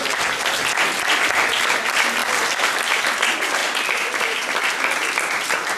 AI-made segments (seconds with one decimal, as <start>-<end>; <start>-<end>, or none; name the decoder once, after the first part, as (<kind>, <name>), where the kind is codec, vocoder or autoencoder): 3.6-4.6 (vocoder, BigVGAN v2)